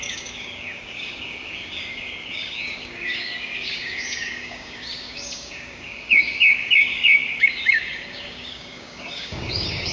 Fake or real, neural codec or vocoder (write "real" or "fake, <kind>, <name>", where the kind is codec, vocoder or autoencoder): fake, codec, DAC